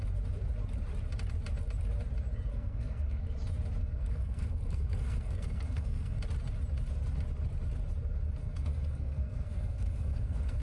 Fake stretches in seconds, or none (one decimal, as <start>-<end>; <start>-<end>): 2.5-3.2; 3.8-6.2; 8.4-10.6